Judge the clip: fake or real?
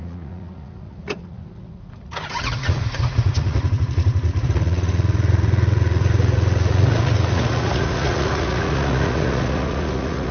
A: fake